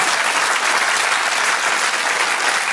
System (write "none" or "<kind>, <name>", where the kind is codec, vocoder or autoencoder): none